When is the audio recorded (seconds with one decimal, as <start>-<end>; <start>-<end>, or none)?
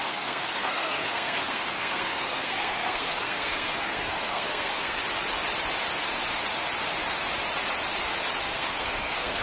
5.0-8.4